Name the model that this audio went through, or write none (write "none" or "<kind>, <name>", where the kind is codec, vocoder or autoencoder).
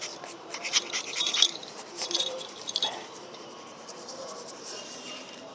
vocoder, BigVGAN v2